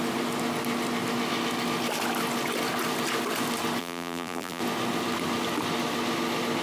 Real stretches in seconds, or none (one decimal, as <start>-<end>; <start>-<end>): 0.0-3.8; 4.6-6.6